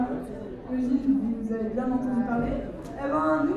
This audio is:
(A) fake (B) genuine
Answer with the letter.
B